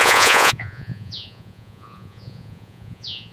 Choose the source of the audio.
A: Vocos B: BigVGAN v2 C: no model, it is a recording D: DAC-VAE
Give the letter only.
A